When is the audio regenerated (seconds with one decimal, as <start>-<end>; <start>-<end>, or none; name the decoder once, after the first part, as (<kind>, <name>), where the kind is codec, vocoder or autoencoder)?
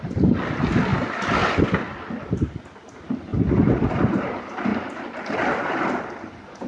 0.0-0.9 (vocoder, BigVGAN v2); 2.5-3.3; 3.9-6.7